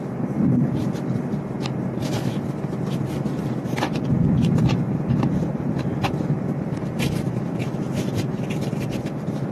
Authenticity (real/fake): fake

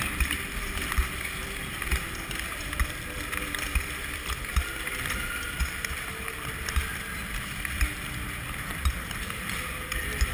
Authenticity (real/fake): real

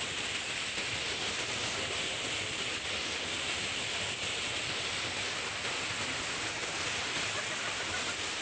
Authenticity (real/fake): real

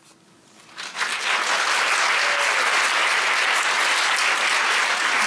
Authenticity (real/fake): real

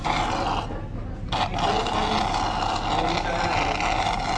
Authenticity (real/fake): real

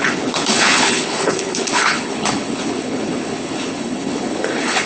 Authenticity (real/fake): fake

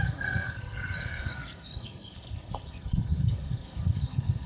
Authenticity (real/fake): fake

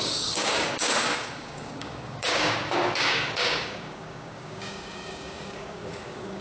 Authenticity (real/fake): fake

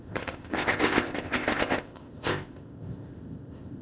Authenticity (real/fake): fake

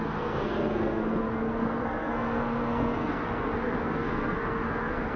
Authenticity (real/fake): fake